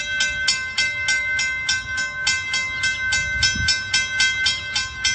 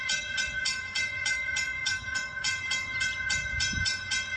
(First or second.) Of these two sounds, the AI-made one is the second